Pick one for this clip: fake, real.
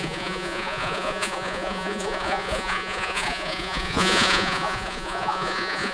fake